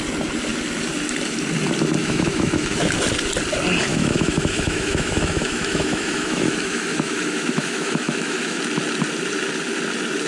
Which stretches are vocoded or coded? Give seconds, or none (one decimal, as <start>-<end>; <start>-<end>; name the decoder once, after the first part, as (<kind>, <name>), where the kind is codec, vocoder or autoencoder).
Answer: 2.0-2.9 (autoencoder, DAC-VAE); 3.9-8.6